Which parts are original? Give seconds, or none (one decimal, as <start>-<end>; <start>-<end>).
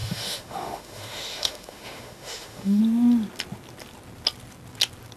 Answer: 2.8-5.2